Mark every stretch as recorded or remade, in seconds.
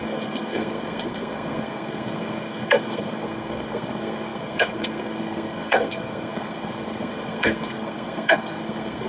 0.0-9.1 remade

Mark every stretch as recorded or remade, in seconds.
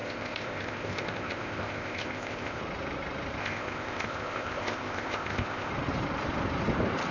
0.0-2.6 remade; 2.6-3.4 recorded; 3.4-5.7 remade; 5.7-7.1 recorded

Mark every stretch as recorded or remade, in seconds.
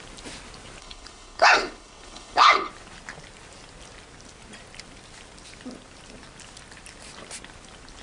0.0-0.8 recorded; 0.8-2.7 remade; 2.7-8.0 recorded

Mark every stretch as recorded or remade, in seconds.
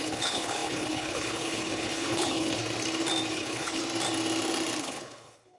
0.0-2.6 remade; 2.6-3.3 recorded; 3.3-3.8 remade; 3.8-4.8 recorded; 4.8-5.6 remade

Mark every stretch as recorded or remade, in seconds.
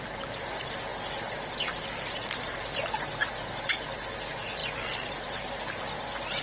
0.0-6.4 recorded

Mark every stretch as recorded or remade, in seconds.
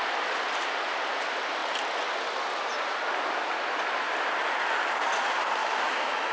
0.0-5.6 recorded; 5.6-6.3 remade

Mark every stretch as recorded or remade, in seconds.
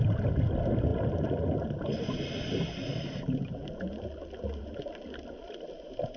0.0-6.2 recorded